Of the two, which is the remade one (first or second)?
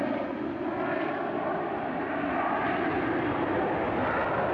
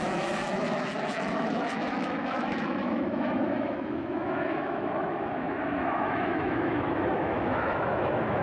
second